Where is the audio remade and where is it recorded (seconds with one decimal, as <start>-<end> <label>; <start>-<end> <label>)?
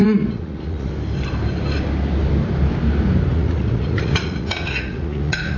0.0-0.9 remade; 0.9-3.3 recorded; 3.3-5.6 remade